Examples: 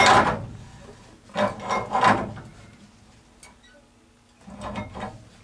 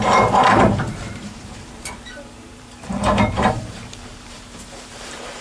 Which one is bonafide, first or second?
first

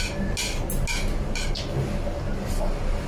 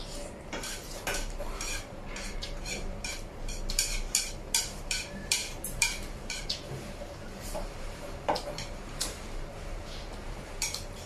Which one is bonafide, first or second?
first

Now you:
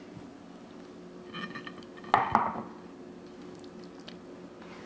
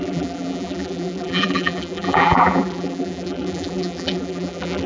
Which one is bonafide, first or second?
first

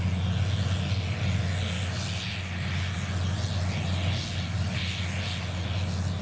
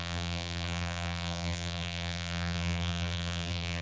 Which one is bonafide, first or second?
first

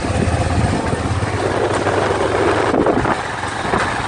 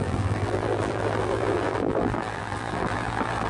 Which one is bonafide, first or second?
first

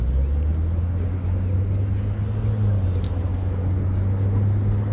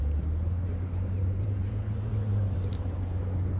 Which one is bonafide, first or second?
first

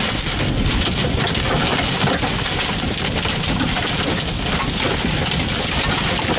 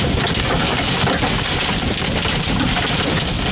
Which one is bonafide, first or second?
second